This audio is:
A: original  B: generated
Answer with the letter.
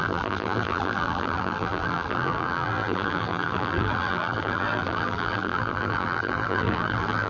B